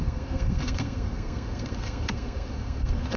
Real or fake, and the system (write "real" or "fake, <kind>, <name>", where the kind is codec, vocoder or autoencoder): fake, codec, SNAC